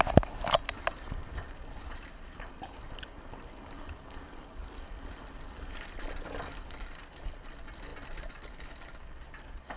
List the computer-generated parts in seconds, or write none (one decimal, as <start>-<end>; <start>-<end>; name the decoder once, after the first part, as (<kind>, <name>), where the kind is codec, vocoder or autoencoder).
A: none